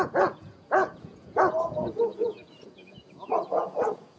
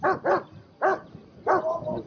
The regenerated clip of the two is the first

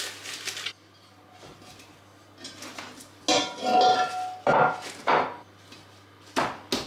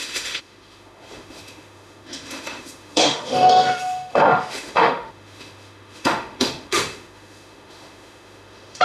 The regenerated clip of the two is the second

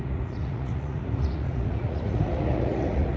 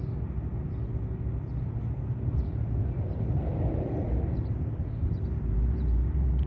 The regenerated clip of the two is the first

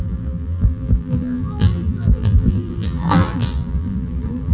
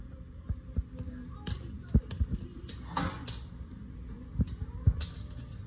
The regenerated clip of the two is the first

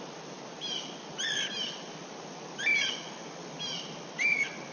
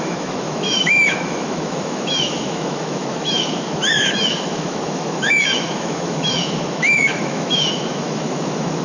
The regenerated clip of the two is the second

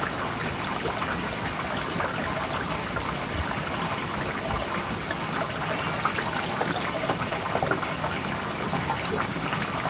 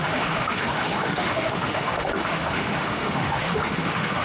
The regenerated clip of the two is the second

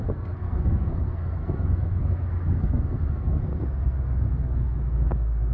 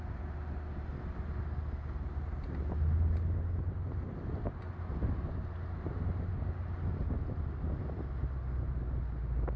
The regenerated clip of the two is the first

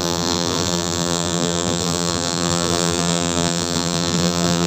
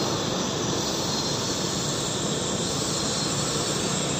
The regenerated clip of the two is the first